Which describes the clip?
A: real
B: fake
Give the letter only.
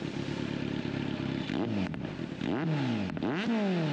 A